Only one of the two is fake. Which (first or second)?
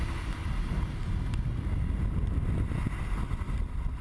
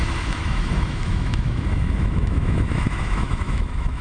second